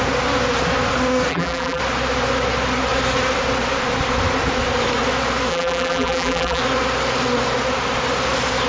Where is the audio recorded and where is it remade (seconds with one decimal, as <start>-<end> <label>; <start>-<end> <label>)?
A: 0.0-1.3 recorded; 1.3-1.8 remade; 1.8-5.5 recorded; 5.5-6.6 remade; 6.6-8.7 recorded